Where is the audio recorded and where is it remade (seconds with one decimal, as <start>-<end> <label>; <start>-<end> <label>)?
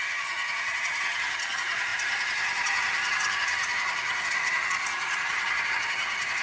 0.0-6.4 remade